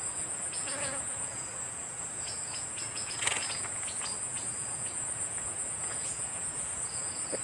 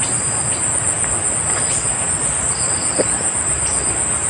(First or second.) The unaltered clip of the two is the second